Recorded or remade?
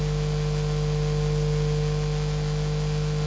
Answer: recorded